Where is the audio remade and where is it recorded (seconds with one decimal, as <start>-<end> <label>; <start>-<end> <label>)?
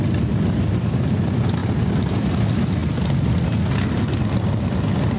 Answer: 0.0-5.2 recorded